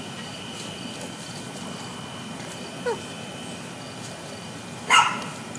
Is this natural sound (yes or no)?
no